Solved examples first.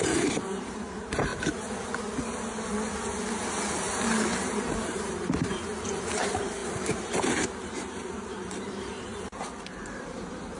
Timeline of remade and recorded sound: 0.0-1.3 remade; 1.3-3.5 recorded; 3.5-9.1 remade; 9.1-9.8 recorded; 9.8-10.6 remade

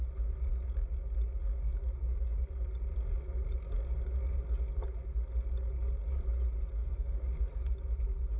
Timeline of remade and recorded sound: 0.0-6.8 recorded; 6.8-7.4 remade; 7.4-8.4 recorded

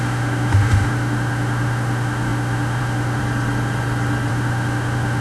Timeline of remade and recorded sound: 0.0-3.2 remade; 3.2-4.3 recorded; 4.3-5.2 remade

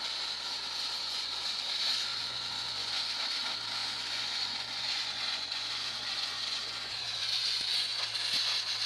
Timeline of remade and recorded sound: 0.0-1.0 recorded; 1.0-1.6 remade; 1.6-2.1 recorded; 2.1-3.0 remade; 3.0-3.8 recorded; 3.8-8.0 remade; 8.0-8.9 recorded

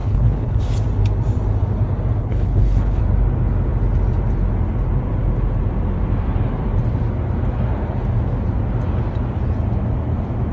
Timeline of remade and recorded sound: 0.0-0.6 remade; 0.6-2.2 recorded; 2.2-3.0 remade; 3.0-10.5 recorded

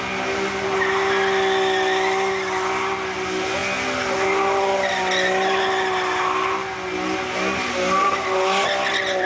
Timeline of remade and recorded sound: 0.0-9.3 recorded